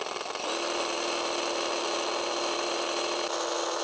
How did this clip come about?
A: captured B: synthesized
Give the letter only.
A